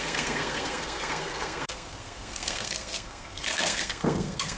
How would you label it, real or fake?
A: fake